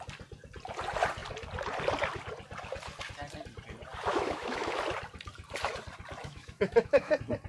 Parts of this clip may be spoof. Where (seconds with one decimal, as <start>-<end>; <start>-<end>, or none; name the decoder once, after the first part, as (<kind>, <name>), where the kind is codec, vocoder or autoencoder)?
4.1-4.8 (autoencoder, DAC-VAE); 6.2-7.1